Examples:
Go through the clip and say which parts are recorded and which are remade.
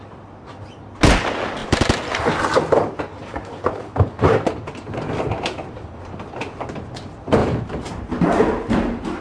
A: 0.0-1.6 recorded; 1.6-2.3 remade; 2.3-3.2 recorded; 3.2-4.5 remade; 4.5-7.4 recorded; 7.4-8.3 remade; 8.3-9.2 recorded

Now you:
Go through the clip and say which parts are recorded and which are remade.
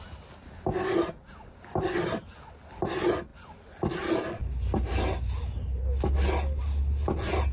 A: 0.0-7.5 recorded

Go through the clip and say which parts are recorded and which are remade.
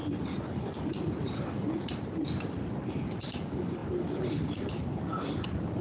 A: 0.0-2.9 remade; 2.9-3.8 recorded; 3.8-4.7 remade; 4.7-5.8 recorded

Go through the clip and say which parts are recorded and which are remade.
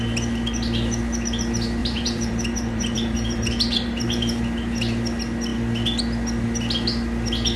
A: 0.0-1.8 recorded; 1.8-4.4 remade; 4.4-7.6 recorded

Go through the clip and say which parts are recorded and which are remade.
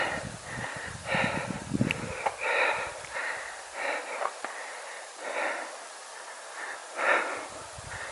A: 0.0-3.2 remade; 3.2-4.0 recorded; 4.0-8.1 remade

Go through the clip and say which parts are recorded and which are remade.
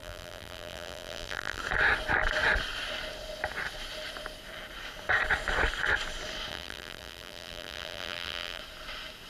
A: 0.0-1.6 remade; 1.6-6.5 recorded; 6.5-8.6 remade; 8.6-9.3 recorded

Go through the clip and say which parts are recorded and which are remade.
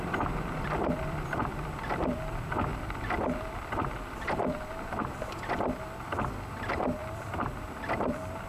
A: 0.0-8.5 remade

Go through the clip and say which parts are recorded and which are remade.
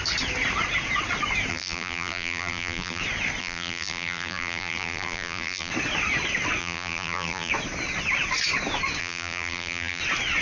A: 0.0-1.5 recorded; 1.5-3.0 remade; 3.0-3.4 recorded; 3.4-5.7 remade; 5.7-6.6 recorded; 6.6-7.5 remade; 7.5-9.0 recorded; 9.0-10.0 remade; 10.0-10.4 recorded